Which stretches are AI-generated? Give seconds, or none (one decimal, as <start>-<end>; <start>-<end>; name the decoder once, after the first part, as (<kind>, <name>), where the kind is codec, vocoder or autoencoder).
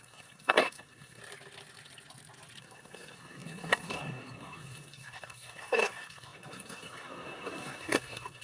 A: 0.0-1.2 (codec, SNAC); 2.6-8.4